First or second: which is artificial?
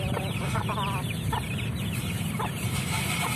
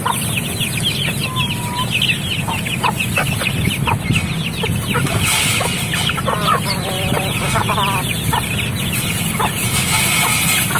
first